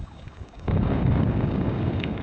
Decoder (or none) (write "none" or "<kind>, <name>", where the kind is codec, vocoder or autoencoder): codec, DAC